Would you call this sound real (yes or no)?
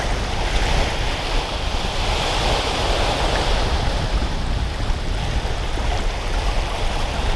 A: yes